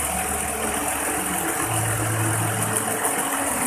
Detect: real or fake real